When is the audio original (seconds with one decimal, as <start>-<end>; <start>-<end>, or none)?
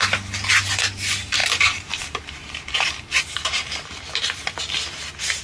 0.0-1.4; 4.6-5.4